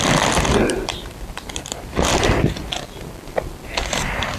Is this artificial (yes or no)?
yes